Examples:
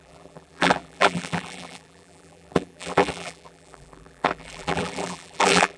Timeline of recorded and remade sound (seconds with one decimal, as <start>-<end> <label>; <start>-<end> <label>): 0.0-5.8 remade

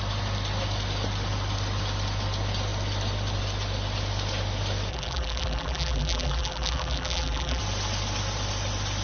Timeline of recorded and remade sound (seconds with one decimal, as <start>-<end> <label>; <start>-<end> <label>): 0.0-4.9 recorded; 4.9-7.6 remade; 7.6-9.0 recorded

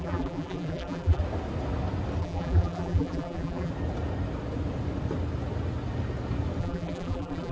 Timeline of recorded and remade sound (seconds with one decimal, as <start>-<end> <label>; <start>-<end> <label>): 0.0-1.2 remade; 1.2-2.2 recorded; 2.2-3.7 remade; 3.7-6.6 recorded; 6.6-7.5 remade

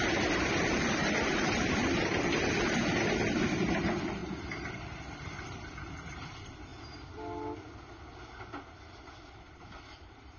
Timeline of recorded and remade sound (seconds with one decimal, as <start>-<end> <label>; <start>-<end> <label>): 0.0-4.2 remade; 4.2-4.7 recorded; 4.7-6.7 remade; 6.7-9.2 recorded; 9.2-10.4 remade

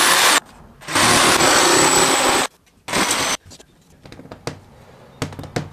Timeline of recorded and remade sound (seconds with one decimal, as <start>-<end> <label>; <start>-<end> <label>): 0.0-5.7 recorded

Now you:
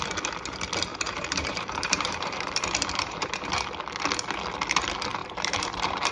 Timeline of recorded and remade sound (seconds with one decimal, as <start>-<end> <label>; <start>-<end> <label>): 0.0-0.9 recorded; 0.9-3.5 remade; 3.5-5.2 recorded; 5.2-6.1 remade

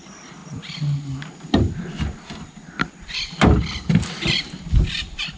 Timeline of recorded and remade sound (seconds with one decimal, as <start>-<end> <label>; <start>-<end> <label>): 0.0-5.4 recorded

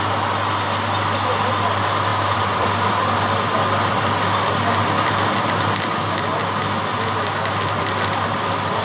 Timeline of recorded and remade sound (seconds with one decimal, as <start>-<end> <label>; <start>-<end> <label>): 0.0-2.1 recorded; 2.1-2.9 remade; 2.9-8.8 recorded